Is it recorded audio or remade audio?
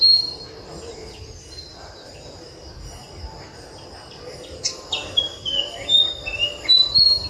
recorded